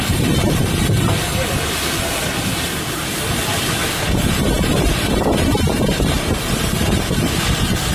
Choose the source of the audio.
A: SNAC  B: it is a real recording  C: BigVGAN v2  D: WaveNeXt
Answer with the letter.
C